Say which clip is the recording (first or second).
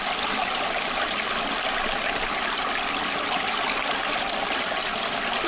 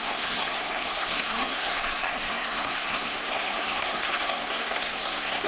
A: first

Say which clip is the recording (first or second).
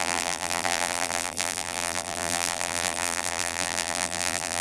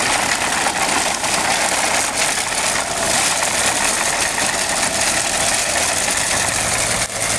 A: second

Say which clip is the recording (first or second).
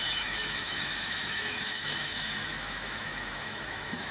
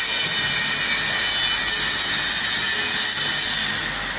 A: second